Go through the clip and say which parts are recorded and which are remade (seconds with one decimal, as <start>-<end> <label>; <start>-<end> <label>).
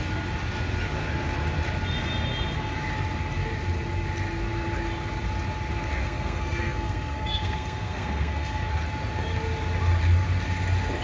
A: 0.0-6.0 recorded; 6.0-8.7 remade; 8.7-11.0 recorded